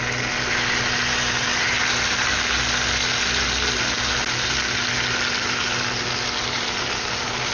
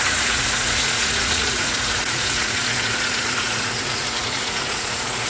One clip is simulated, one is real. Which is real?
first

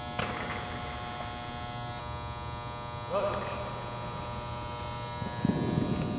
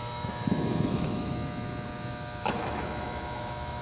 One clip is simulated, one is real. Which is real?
first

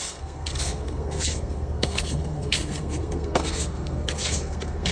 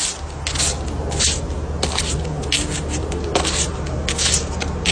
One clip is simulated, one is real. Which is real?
second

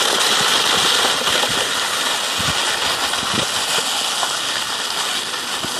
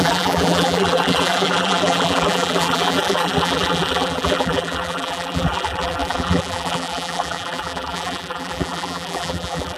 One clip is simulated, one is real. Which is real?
first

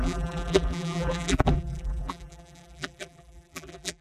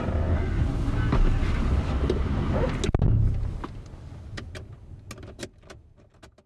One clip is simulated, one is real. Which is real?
second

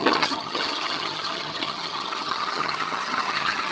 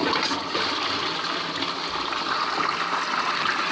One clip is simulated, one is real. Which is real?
second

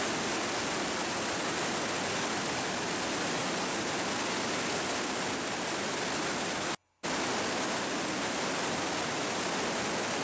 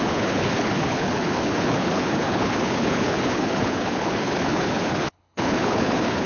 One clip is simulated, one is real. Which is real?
first